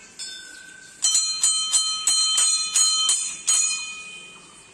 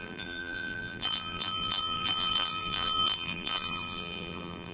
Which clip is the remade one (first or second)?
second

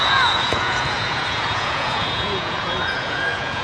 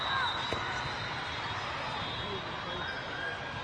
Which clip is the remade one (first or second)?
first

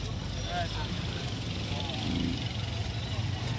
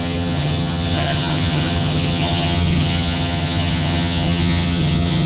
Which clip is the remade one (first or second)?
second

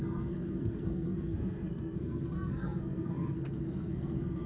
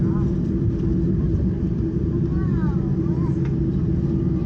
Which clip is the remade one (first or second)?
first